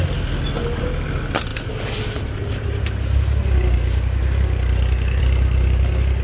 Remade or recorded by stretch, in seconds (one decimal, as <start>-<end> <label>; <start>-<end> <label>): 0.0-6.2 recorded